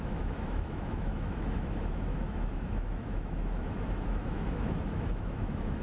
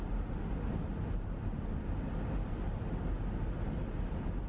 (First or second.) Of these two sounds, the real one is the second